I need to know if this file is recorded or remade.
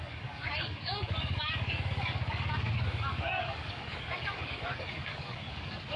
remade